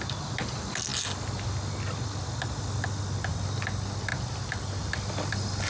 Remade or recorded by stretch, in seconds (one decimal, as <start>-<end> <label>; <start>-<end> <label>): 0.0-5.7 recorded